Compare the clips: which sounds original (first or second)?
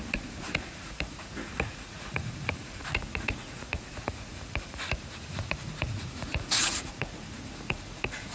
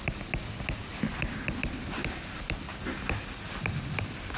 second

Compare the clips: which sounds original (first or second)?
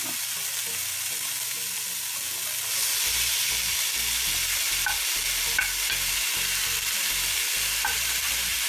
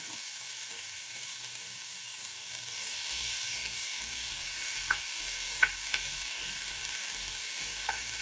first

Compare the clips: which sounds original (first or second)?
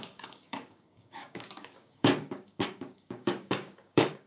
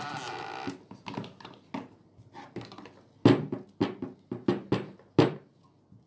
second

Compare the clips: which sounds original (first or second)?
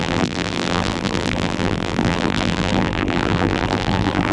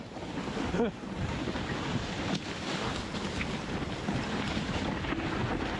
second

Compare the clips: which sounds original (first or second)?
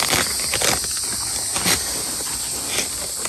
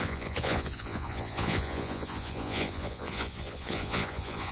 first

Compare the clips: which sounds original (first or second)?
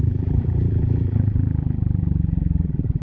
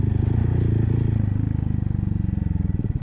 second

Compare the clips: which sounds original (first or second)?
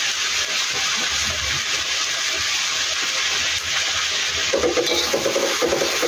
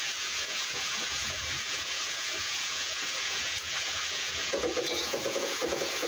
first